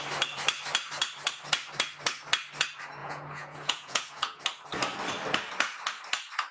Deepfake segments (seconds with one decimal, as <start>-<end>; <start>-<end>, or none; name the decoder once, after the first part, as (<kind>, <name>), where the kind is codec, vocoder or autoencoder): 3.0-4.4 (vocoder, Vocos)